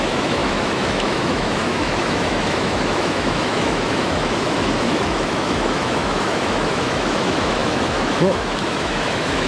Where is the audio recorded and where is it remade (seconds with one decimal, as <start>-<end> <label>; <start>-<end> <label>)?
0.0-9.5 remade